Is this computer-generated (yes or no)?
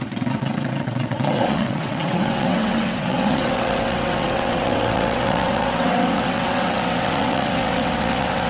yes